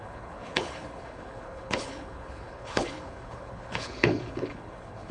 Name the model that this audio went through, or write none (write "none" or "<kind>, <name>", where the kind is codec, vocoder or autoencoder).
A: codec, HILCodec